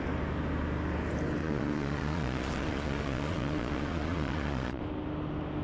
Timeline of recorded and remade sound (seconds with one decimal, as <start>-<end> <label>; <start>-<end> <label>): 0.0-1.4 recorded; 1.4-4.8 remade; 4.8-5.6 recorded